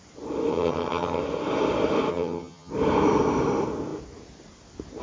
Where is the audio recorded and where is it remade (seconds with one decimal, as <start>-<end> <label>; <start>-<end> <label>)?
0.0-0.5 recorded; 0.5-1.2 remade; 1.2-2.1 recorded; 2.1-2.7 remade; 2.7-5.0 recorded

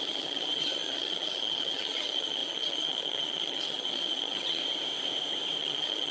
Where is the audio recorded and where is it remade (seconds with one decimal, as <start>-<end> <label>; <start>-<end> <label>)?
0.0-4.6 remade; 4.6-5.6 recorded; 5.6-6.1 remade

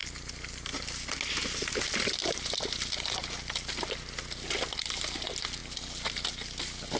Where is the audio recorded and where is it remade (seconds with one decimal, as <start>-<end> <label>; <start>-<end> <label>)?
0.0-7.0 recorded

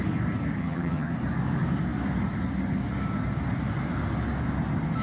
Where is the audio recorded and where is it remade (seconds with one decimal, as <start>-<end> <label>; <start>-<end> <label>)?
0.0-0.6 recorded; 0.6-1.1 remade; 1.1-5.0 recorded